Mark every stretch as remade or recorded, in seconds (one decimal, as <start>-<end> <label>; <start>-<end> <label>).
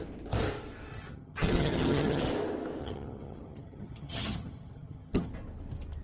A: 0.0-0.9 recorded; 0.9-2.2 remade; 2.2-2.8 recorded; 2.8-5.3 remade; 5.3-6.0 recorded